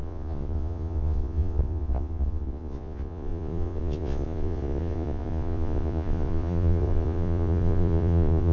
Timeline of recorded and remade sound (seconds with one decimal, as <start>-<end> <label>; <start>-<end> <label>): 0.0-8.5 remade